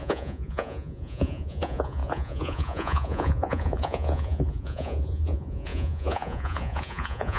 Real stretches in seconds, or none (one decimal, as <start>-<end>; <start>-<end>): none

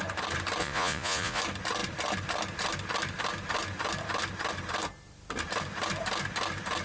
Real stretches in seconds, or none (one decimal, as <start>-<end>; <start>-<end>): 0.0-0.6; 1.4-6.8